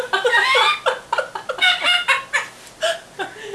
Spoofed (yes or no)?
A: no